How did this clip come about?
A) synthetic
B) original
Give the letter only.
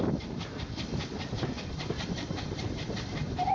B